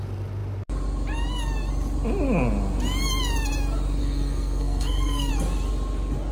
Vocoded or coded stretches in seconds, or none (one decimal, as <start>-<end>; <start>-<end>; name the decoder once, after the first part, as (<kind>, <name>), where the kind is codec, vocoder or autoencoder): 4.0-5.3 (codec, SNAC)